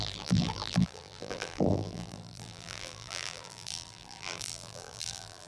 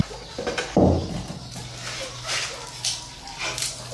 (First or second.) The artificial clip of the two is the first